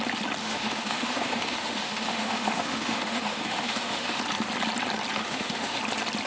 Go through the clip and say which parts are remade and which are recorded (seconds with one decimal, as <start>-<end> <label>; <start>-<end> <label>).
0.0-0.4 recorded; 0.4-4.2 remade; 4.2-5.2 recorded; 5.2-5.8 remade; 5.8-6.3 recorded